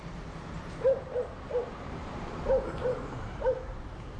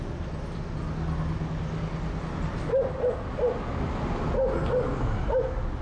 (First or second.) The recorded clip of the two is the second